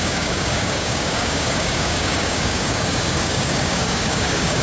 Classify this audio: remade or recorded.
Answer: remade